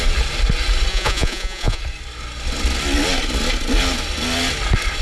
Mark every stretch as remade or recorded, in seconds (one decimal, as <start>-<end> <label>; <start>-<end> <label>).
0.0-0.9 recorded; 0.9-1.8 remade; 1.8-5.0 recorded